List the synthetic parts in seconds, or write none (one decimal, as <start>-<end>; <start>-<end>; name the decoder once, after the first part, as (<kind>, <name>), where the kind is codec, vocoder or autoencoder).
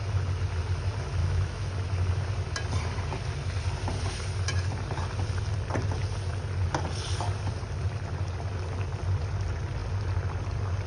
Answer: 1.2-1.7 (autoencoder, DAC-VAE)